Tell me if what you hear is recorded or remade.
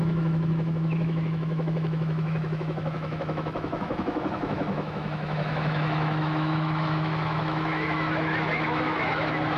remade